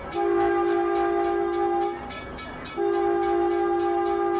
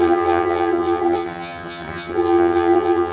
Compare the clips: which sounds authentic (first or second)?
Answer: first